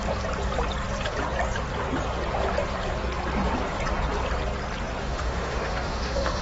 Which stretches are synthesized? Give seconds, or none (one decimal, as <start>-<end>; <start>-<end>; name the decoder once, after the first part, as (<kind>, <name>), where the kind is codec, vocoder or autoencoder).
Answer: 5.0-6.4 (autoencoder, DAC-VAE)